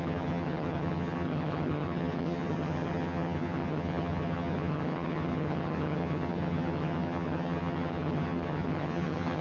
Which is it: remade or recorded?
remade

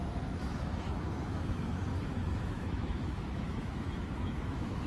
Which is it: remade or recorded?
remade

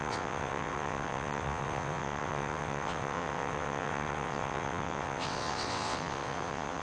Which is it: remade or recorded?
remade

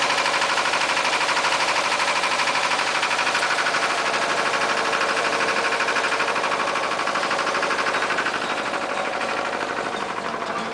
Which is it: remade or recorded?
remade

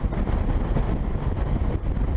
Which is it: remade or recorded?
recorded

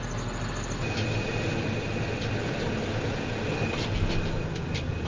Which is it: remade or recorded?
recorded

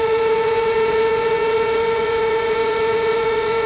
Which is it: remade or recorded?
remade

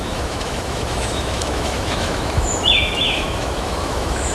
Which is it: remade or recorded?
remade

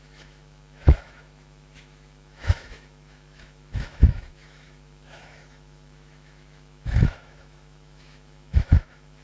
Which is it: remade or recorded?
remade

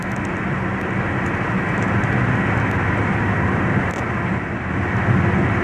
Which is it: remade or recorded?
recorded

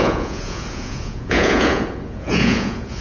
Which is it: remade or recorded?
remade